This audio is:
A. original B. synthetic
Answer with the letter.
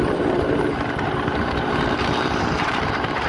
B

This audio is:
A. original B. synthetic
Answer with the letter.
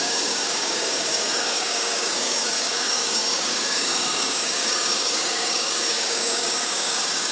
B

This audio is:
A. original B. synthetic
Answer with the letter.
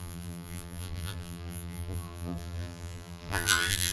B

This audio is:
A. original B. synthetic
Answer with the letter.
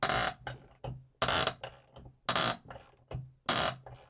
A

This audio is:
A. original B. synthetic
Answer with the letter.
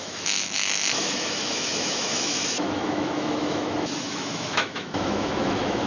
B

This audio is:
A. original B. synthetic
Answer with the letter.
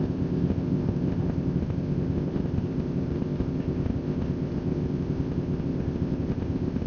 B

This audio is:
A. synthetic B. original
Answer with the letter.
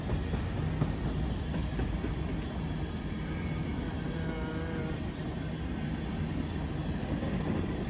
B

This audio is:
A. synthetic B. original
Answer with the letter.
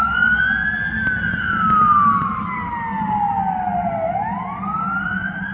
B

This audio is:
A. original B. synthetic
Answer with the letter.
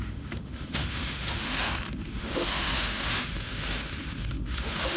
B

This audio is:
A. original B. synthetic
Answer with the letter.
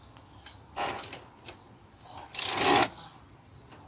A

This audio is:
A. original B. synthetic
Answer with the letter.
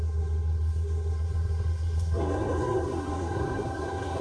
B